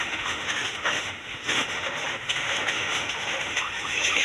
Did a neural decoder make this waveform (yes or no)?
yes